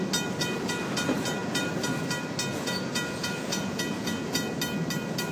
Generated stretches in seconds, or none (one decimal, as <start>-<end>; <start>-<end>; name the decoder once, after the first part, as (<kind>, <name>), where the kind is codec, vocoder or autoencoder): 2.5-4.5 (vocoder, Vocos)